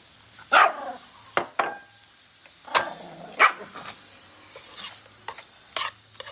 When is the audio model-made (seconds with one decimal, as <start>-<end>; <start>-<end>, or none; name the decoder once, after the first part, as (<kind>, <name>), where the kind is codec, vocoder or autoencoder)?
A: none